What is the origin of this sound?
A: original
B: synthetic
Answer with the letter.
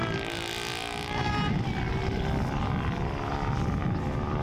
A